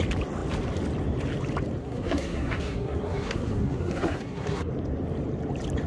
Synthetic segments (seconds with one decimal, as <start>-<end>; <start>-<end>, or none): 1.8-4.7